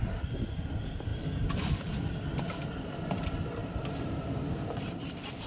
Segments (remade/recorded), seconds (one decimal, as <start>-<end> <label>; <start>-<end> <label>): 0.0-3.6 recorded; 3.6-5.1 remade; 5.1-5.5 recorded